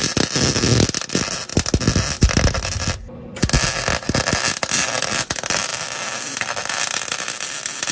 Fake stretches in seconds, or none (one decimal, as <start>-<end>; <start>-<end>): none